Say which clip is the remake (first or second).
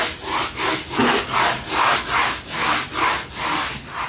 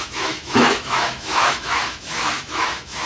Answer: second